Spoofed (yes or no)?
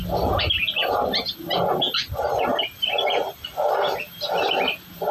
no